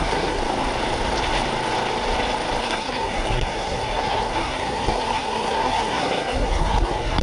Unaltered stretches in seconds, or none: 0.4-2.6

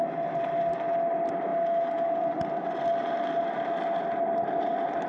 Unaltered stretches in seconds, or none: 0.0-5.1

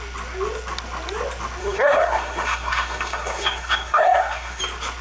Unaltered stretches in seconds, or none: 0.0-1.6; 4.6-5.0